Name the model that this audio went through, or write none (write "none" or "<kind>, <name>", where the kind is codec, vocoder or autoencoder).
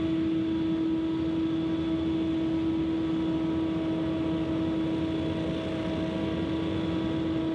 none